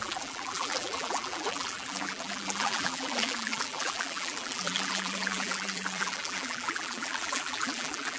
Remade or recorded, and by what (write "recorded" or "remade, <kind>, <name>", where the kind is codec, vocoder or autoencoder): remade, vocoder, BigVGAN v2